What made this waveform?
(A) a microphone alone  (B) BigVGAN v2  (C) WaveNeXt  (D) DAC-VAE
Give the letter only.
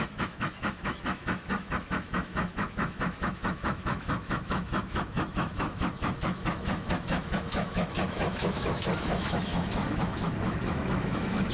D